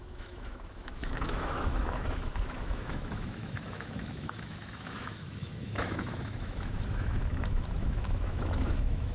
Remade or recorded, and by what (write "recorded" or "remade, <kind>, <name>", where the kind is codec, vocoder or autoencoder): remade, autoencoder, DAC-VAE